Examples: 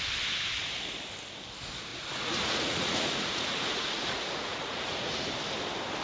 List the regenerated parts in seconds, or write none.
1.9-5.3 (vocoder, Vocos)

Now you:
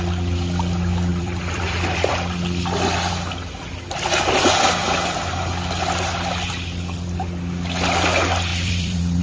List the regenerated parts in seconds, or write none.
1.1-2.1 (vocoder, BigVGAN v2); 8.5-9.2

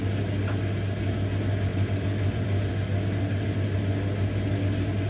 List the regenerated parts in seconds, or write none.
1.7-2.7 (vocoder, BigVGAN v2)

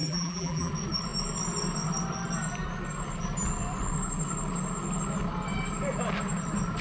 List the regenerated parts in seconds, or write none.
0.0-0.7 (vocoder, BigVGAN v2)

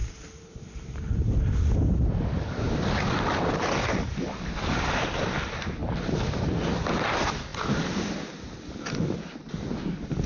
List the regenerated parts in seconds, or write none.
0.0-1.2 (vocoder, BigVGAN v2)